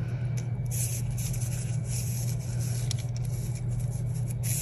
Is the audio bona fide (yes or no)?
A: yes